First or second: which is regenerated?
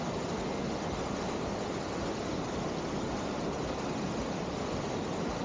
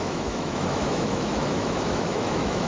second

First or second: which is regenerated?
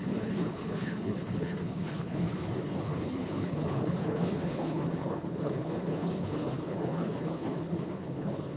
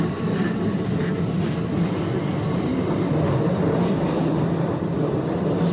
first